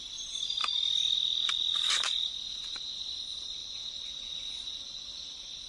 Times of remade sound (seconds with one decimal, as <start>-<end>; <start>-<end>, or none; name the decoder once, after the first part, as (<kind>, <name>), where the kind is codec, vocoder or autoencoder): 0.0-0.6 (vocoder, BigVGAN v2); 3.0-3.6; 4.5-5.7